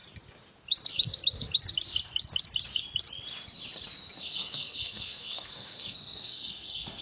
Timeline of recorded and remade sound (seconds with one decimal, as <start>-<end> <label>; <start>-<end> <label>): 0.0-4.2 recorded; 4.2-7.0 remade

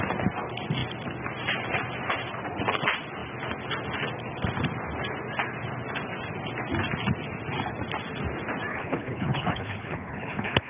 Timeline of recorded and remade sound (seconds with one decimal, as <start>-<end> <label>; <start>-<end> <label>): 0.0-8.7 recorded; 8.7-10.7 remade

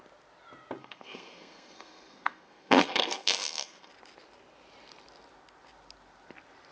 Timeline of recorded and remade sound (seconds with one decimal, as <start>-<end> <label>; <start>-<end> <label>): 0.0-0.8 recorded; 0.8-3.9 remade; 3.9-6.7 recorded

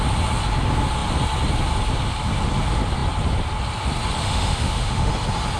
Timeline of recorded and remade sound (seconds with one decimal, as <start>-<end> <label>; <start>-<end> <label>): 0.0-4.2 recorded; 4.2-5.1 remade; 5.1-5.6 recorded

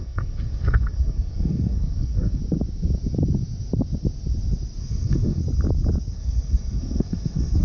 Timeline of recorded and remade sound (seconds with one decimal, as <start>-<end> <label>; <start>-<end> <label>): 0.0-2.4 remade; 2.4-4.8 recorded; 4.8-5.4 remade; 5.4-6.1 recorded; 6.1-7.6 remade

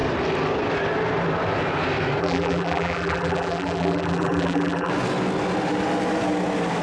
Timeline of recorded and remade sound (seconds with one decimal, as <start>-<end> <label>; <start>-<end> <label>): 0.0-2.2 recorded; 2.2-4.9 remade; 4.9-6.8 recorded

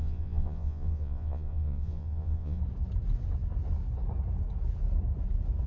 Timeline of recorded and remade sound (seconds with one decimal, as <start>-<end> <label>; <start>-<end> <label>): 0.0-2.6 remade; 2.6-5.7 recorded

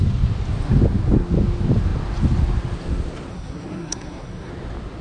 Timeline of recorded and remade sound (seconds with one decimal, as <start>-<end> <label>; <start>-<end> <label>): 0.0-3.3 recorded; 3.3-4.5 remade; 4.5-5.0 recorded